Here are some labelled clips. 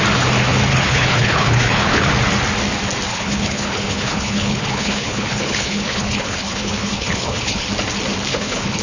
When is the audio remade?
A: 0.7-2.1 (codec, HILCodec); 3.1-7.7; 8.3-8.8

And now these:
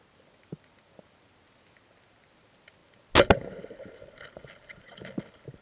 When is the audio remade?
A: none

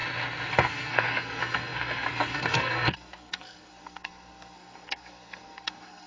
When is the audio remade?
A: 0.5-6.1 (codec, SNAC)

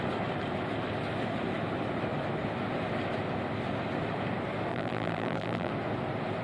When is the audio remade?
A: 4.7-5.7 (vocoder, BigVGAN v2)

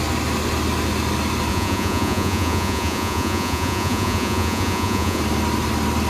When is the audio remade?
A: 1.5-5.2 (vocoder, Vocos)

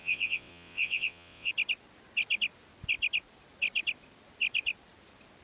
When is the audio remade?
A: 0.0-1.5 (vocoder, WaveNeXt)

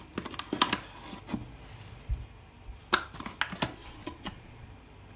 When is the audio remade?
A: 3.8-4.7 (vocoder, Vocos)

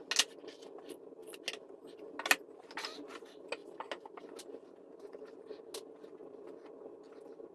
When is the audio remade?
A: none